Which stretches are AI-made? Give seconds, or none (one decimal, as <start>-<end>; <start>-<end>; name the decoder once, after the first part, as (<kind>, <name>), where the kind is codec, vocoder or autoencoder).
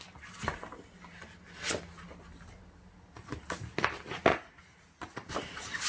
4.3-5.3 (vocoder, Vocos)